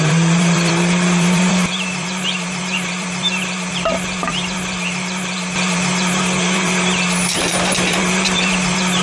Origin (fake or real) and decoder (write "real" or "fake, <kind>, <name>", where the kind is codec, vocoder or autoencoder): fake, vocoder, BigVGAN v2